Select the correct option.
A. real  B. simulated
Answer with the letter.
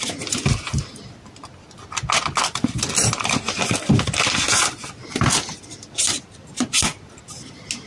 A